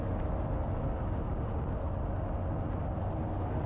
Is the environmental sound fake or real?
real